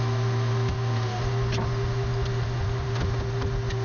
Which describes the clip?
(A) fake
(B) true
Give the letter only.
B